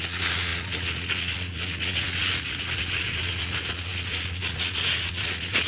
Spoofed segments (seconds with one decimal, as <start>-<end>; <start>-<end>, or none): 0.0-5.7